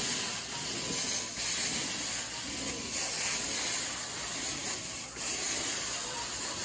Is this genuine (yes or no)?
yes